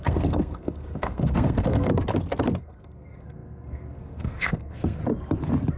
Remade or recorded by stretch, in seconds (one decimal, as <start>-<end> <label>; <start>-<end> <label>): 0.0-1.9 remade; 1.9-2.6 recorded; 2.6-5.0 remade; 5.0-5.8 recorded